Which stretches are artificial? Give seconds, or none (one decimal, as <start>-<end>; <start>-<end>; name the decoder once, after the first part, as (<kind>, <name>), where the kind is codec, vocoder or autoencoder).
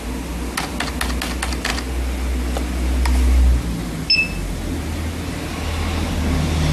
none